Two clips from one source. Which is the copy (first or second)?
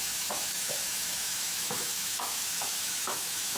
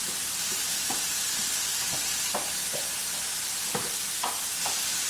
first